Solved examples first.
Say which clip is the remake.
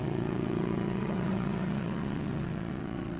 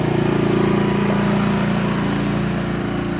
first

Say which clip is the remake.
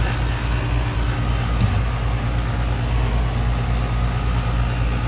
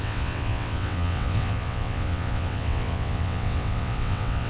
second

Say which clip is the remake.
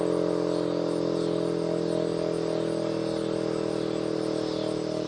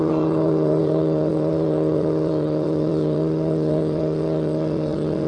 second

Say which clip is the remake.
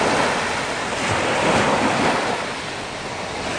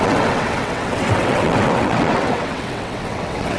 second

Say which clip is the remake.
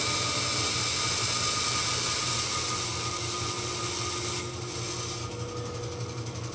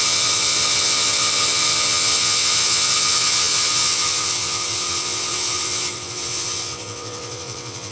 second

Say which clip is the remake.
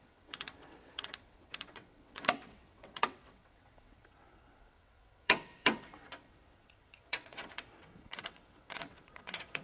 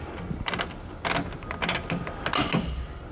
first